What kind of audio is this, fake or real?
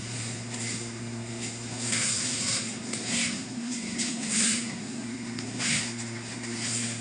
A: fake